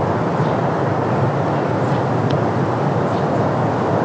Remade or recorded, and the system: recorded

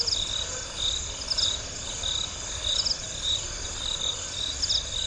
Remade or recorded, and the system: recorded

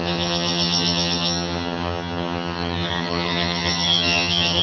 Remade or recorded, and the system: remade, vocoder, HiFi-GAN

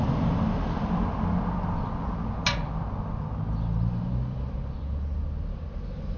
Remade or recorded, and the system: recorded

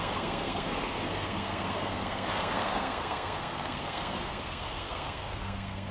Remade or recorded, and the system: remade, codec, SNAC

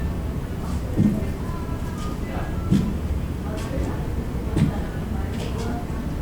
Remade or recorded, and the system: recorded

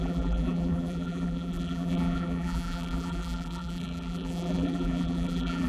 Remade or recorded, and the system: remade, vocoder, BigVGAN v2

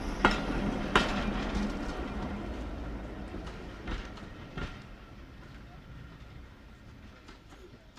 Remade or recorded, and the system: recorded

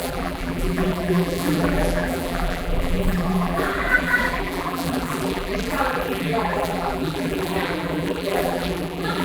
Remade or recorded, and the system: remade, vocoder, BigVGAN v2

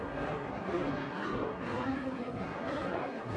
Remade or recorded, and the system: remade, codec, SNAC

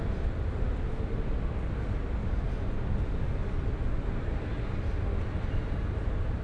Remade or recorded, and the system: recorded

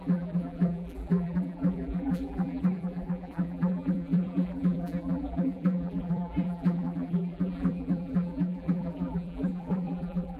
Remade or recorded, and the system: remade, vocoder, BigVGAN v2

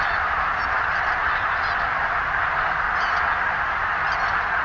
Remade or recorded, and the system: recorded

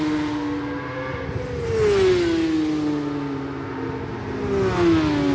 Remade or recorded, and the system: recorded